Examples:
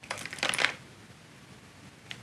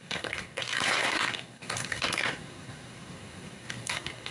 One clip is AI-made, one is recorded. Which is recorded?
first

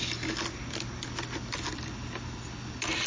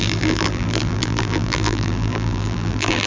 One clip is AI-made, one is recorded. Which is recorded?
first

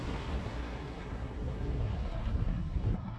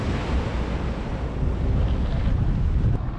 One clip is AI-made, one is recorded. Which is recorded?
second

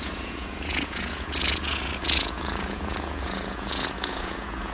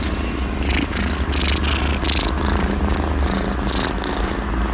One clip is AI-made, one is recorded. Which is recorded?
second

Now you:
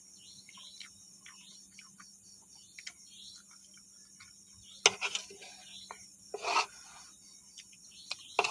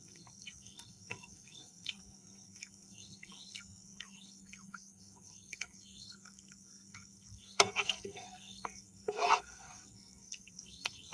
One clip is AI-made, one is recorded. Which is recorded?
first